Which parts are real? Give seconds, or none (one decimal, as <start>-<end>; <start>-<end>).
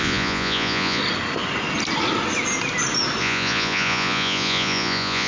1.0-3.2